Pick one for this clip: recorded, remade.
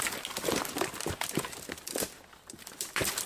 recorded